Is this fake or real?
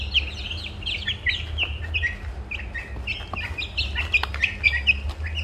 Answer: real